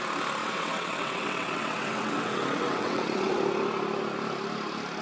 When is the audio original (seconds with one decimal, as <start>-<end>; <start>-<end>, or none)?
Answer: 0.0-0.4; 3.4-5.0